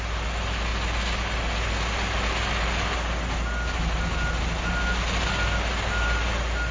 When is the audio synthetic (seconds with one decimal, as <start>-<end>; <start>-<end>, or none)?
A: none